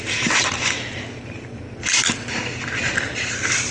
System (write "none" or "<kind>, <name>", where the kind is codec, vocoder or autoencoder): vocoder, BigVGAN v2